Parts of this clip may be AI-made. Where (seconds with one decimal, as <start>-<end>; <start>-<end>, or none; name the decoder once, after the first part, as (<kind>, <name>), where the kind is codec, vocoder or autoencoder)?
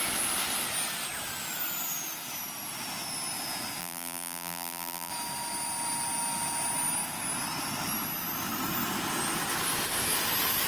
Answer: 3.8-5.1 (vocoder, BigVGAN v2)